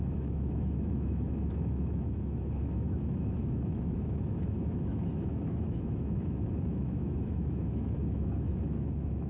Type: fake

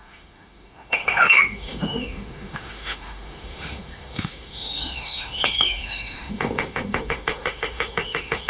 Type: fake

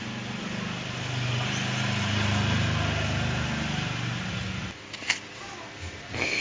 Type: real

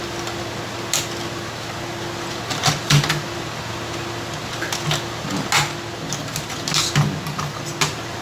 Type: real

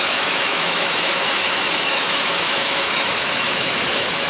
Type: fake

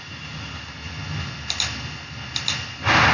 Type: real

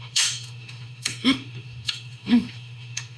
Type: fake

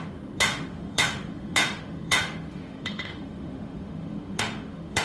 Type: fake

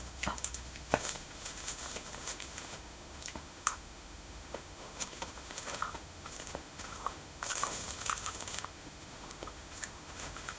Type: fake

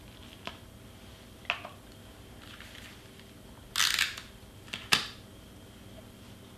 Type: real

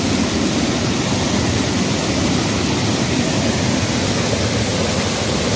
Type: real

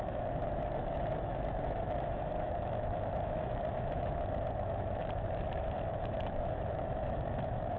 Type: fake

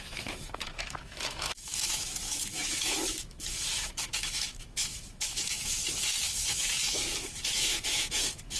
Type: fake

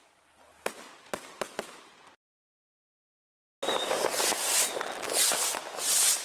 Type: real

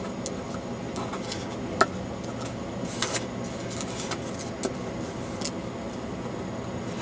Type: real